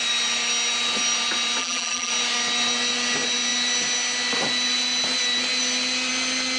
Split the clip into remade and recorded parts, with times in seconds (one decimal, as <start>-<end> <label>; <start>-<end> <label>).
0.0-1.6 recorded; 1.6-2.1 remade; 2.1-6.6 recorded